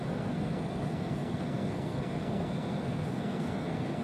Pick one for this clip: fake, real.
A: fake